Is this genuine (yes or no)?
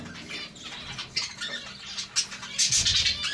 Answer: yes